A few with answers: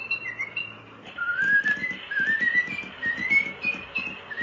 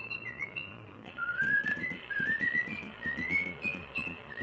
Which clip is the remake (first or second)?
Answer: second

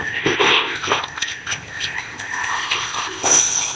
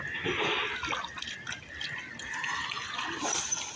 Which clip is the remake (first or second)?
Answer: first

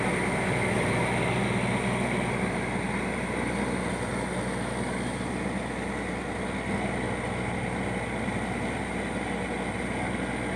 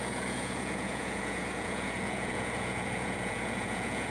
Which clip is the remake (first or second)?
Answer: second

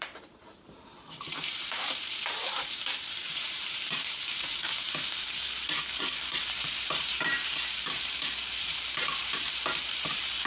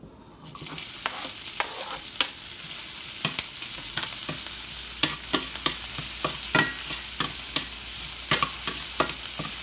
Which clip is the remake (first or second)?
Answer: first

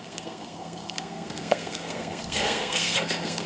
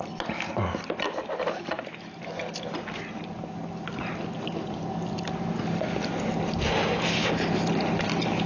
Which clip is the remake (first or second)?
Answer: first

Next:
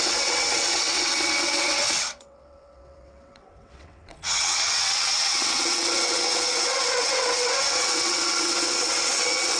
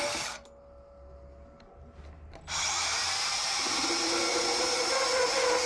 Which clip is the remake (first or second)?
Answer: first